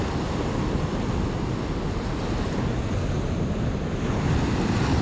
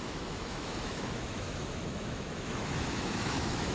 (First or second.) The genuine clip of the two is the first